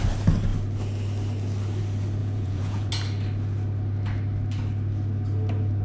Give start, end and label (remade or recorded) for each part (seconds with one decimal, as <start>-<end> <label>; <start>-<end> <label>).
0.0-2.2 recorded; 2.2-2.9 remade; 2.9-5.8 recorded